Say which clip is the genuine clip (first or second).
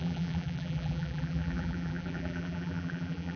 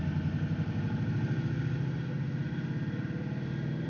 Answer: second